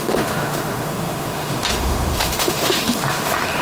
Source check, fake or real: fake